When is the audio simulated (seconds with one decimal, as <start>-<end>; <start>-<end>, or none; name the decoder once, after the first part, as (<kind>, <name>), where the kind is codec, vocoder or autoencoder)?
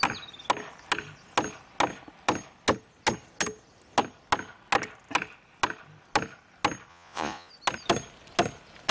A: 6.9-7.5 (vocoder, Vocos)